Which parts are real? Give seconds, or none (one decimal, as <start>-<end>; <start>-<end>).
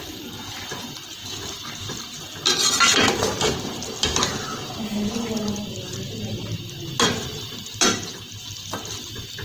0.0-1.2; 1.8-4.1; 5.7-7.9; 8.4-9.4